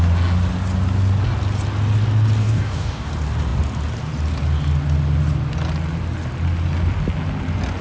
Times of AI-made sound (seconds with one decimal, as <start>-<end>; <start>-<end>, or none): 2.4-3.1